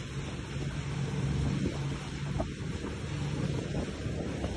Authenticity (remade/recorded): recorded